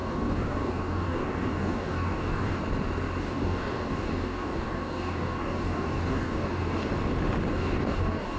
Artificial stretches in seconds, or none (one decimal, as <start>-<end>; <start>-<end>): 0.0-2.6; 3.2-6.9; 7.5-8.4